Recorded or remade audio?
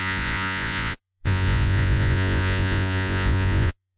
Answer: remade